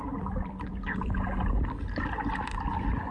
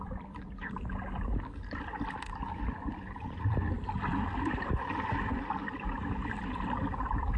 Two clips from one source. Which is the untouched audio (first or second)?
first